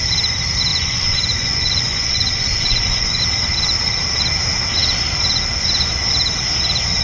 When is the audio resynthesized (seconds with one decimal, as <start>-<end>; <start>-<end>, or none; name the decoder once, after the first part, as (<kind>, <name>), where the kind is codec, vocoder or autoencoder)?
0.7-3.2 (vocoder, Vocos)